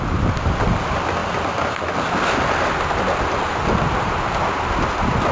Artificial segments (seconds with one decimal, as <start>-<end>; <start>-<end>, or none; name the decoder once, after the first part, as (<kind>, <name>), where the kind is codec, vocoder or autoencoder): none